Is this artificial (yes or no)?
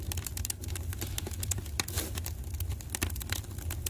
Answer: no